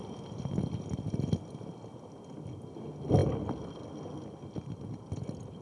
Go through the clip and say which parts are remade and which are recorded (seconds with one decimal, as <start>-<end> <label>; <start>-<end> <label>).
0.0-5.6 recorded